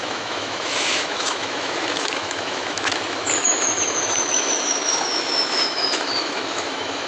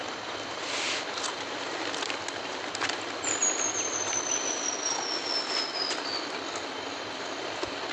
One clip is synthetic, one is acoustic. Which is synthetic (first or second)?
first